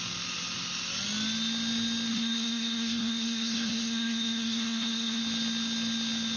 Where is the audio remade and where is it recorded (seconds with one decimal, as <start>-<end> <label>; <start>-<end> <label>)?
0.0-2.1 recorded; 2.1-5.2 remade; 5.2-6.4 recorded